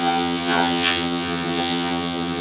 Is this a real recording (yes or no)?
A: no